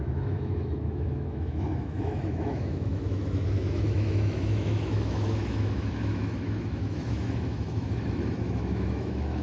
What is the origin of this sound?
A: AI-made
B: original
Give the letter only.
A